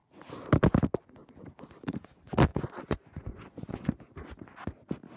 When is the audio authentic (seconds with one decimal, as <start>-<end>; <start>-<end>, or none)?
0.0-2.5; 4.0-5.2